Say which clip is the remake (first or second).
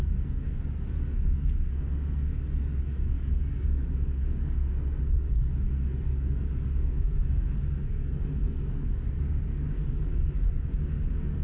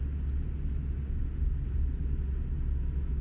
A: first